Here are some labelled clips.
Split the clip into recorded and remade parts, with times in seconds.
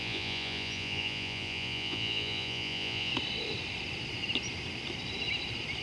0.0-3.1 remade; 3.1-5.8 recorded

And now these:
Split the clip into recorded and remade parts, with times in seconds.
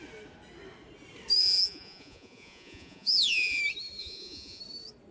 0.0-1.4 recorded; 1.4-3.6 remade; 3.6-4.0 recorded; 4.0-4.6 remade; 4.6-5.1 recorded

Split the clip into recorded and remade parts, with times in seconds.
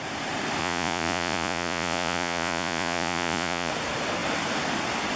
0.0-0.6 recorded; 0.6-3.7 remade; 3.7-5.2 recorded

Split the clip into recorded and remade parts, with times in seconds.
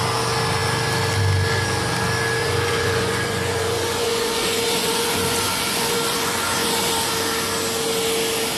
0.0-2.4 recorded; 2.4-6.9 remade; 6.9-8.6 recorded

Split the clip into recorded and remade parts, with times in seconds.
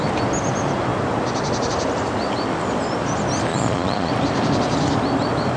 0.0-3.5 recorded; 3.5-4.1 remade; 4.1-5.6 recorded